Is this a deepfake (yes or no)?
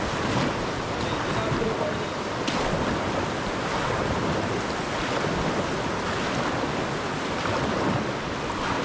no